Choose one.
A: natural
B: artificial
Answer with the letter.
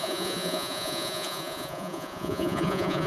B